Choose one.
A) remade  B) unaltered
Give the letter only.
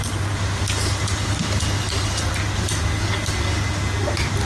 B